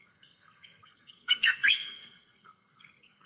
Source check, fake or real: fake